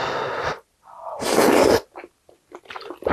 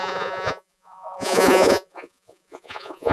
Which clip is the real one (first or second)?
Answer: first